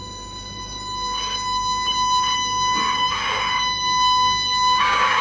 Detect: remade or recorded remade